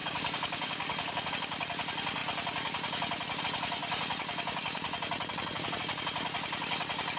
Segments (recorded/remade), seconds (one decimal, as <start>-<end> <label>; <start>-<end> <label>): 0.0-1.3 remade; 1.3-7.2 recorded